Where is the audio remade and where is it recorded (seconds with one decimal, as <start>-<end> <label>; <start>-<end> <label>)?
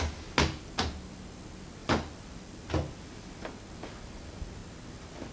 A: 0.0-1.8 recorded; 1.8-2.7 remade; 2.7-5.3 recorded